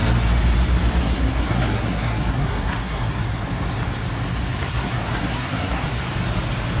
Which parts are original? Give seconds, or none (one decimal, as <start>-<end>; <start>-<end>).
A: 0.0-1.0; 3.2-4.6; 6.0-6.8